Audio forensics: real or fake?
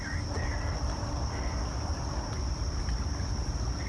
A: real